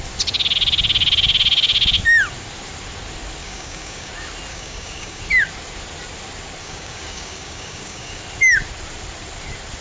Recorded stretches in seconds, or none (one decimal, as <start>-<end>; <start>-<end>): 0.0-3.4; 4.1-4.5; 5.2-6.6; 8.2-9.8